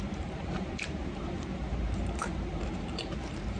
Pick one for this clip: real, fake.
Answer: fake